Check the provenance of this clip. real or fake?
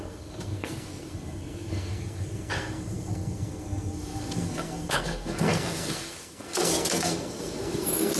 fake